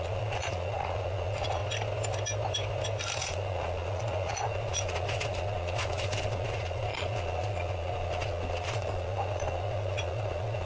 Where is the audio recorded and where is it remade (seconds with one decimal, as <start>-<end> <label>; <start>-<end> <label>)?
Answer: 0.0-1.6 remade; 1.6-3.2 recorded; 3.2-10.7 remade